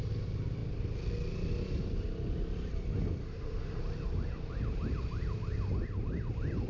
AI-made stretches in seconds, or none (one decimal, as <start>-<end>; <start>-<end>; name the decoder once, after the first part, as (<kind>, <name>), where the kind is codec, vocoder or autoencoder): 3.2-3.8 (autoencoder, DAC-VAE)

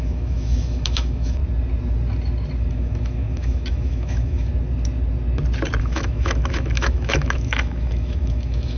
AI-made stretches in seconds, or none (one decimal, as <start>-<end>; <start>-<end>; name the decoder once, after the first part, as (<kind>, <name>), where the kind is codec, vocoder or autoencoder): 0.0-1.4 (autoencoder, DAC-VAE); 2.7-4.5; 5.8-8.8

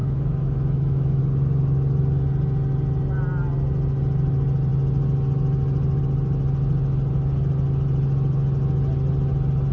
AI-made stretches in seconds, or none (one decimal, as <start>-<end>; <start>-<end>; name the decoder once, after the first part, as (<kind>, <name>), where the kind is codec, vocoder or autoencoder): 0.0-1.2 (autoencoder, DAC-VAE)

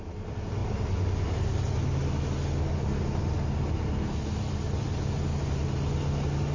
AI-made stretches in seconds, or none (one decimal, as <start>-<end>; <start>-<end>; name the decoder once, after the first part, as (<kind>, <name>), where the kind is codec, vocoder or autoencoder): none

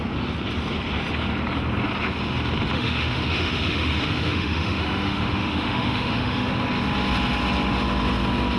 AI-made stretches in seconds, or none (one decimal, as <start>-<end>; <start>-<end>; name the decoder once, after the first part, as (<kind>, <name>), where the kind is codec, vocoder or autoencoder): 2.7-6.5 (autoencoder, DAC-VAE)

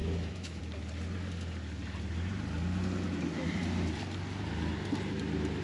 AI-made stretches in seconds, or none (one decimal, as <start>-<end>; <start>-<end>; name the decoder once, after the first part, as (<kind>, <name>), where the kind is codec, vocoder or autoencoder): 0.0-0.6 (autoencoder, DAC-VAE)

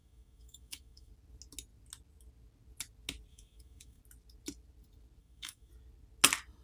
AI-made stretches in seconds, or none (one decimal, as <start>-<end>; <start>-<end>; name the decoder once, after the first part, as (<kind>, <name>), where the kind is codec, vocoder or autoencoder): 0.0-1.1 (autoencoder, DAC-VAE); 3.3-4.0; 5.2-5.7